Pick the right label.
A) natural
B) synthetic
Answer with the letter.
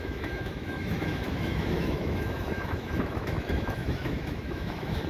B